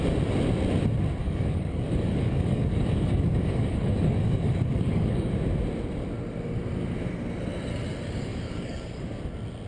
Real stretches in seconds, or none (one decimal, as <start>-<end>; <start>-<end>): 0.0-1.2; 5.3-8.3; 9.2-9.7